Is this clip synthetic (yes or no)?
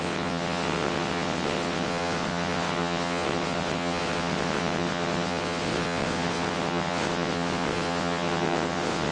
yes